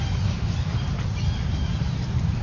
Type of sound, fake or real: real